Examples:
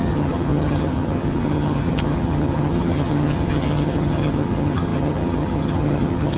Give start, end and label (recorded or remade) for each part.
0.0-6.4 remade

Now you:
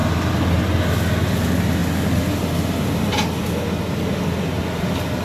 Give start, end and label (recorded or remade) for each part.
0.0-5.2 recorded

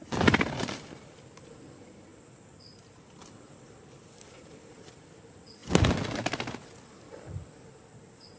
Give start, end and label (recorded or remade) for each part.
0.0-5.6 remade; 5.6-8.4 recorded

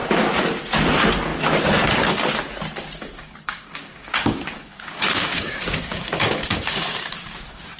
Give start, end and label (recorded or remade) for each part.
0.0-2.8 recorded; 2.8-7.8 remade

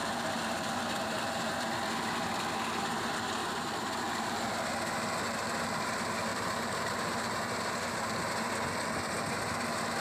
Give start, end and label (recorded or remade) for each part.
0.0-1.4 remade; 1.4-3.4 recorded; 3.4-4.7 remade; 4.7-6.3 recorded; 6.3-8.3 remade; 8.3-10.0 recorded

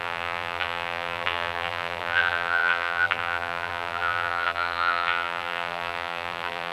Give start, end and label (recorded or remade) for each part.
0.0-6.7 remade

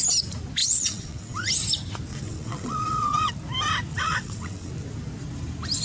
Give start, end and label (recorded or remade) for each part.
0.0-0.6 recorded; 0.6-1.5 remade; 1.5-2.1 recorded; 2.1-3.3 remade; 3.3-3.9 recorded; 3.9-4.7 remade; 4.7-5.8 recorded